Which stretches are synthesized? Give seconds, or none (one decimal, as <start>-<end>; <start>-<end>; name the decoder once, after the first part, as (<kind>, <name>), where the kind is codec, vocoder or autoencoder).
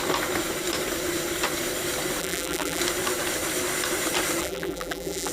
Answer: 2.2-2.8 (vocoder, BigVGAN v2); 4.4-5.3